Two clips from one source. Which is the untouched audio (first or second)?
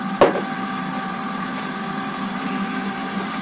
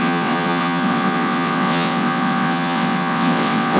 first